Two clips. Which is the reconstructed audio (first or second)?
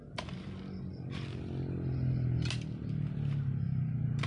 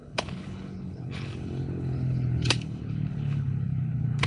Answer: second